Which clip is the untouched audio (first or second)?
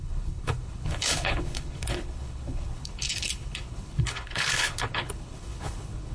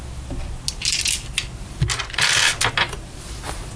second